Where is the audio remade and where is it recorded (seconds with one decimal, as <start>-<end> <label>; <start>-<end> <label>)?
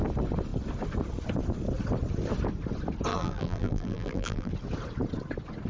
0.0-3.1 recorded; 3.1-4.5 remade; 4.5-5.7 recorded